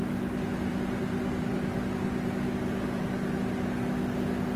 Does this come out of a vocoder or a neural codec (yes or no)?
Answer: no